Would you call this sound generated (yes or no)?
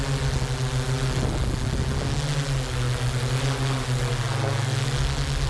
no